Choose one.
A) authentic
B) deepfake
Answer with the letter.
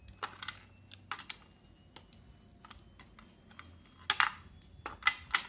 A